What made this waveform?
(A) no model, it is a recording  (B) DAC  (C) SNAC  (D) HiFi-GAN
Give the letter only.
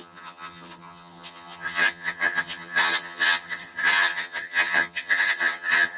D